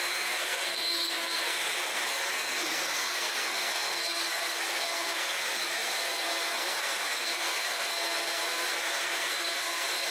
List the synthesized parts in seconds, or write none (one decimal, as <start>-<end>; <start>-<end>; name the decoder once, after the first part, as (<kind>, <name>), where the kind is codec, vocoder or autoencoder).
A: 0.0-10.1 (codec, SNAC)